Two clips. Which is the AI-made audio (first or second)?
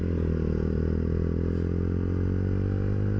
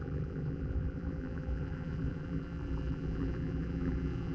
second